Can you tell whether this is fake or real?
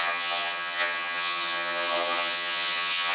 fake